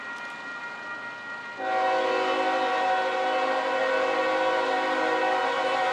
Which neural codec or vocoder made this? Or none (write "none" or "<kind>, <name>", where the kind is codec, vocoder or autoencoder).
none